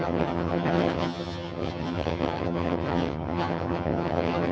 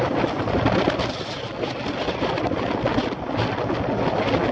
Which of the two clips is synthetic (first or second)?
first